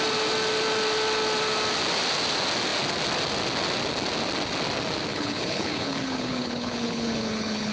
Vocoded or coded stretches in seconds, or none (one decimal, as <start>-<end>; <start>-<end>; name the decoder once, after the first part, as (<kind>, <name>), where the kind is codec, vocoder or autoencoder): 5.1-7.7 (codec, HILCodec)